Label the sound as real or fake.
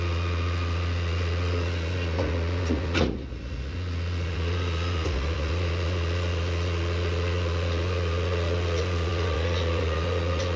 fake